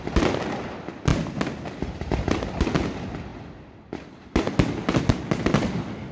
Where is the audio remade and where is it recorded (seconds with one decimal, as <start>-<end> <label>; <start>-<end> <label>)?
0.0-6.1 recorded